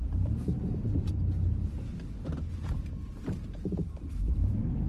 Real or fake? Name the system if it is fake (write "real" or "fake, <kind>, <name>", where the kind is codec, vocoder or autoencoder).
fake, vocoder, BigVGAN v2